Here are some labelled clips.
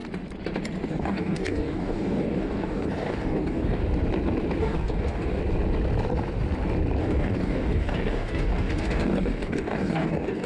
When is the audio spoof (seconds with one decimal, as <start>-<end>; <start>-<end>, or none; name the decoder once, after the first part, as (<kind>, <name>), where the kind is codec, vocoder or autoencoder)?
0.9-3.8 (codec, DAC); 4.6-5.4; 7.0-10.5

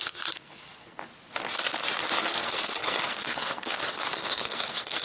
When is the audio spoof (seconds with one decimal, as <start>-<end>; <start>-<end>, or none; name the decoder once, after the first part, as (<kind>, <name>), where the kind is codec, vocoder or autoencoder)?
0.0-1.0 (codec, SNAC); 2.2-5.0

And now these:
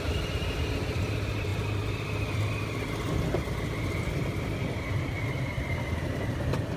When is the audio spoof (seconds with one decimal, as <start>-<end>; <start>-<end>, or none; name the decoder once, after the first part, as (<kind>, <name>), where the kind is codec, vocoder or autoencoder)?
none

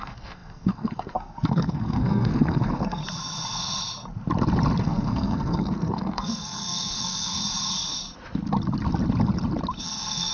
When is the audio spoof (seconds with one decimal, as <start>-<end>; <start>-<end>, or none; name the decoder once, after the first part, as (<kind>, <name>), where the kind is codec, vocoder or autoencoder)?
0.0-3.0 (codec, SNAC); 4.8-7.4; 9.8-10.3